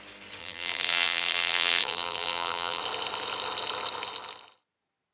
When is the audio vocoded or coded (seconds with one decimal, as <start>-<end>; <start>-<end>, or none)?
0.4-2.8